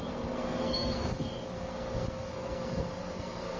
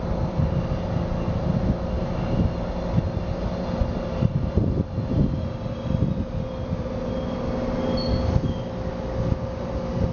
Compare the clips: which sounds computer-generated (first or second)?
first